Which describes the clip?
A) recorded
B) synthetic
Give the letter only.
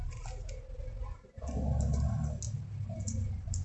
A